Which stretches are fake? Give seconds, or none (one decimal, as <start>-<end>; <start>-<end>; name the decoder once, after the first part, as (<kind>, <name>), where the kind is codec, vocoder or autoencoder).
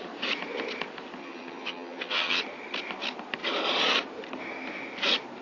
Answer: 1.2-2.4 (vocoder, HiFi-GAN)